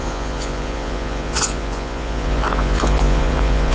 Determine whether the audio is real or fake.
fake